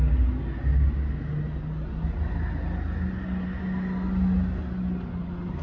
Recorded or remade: recorded